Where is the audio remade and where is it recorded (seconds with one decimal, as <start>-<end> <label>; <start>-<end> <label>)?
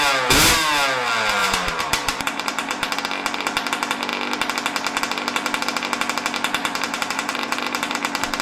0.0-1.4 recorded; 1.4-2.9 remade; 2.9-6.6 recorded; 6.6-8.0 remade; 8.0-8.4 recorded